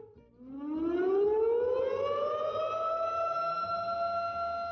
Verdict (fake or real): real